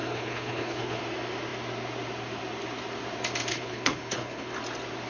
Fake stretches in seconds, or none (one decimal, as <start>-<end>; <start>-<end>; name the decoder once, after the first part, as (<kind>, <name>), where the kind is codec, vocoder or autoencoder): 0.0-1.0 (codec, HILCodec); 3.5-4.5